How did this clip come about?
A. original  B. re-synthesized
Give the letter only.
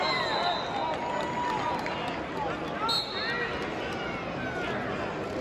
A